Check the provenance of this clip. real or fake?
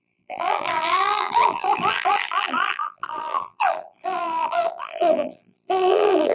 fake